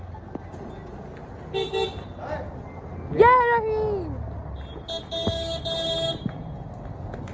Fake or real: real